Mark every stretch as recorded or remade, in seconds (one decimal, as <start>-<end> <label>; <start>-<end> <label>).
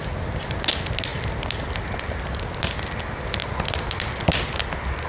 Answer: 0.0-5.1 recorded